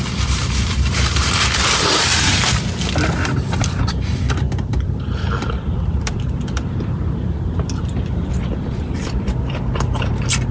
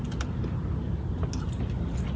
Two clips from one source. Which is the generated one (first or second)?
first